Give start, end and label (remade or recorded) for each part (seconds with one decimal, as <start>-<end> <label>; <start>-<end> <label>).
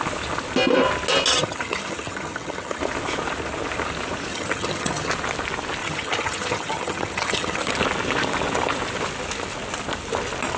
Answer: 0.0-1.3 recorded; 1.3-2.8 remade; 2.8-4.3 recorded; 4.3-5.1 remade; 5.1-5.8 recorded; 5.8-7.7 remade; 7.7-10.6 recorded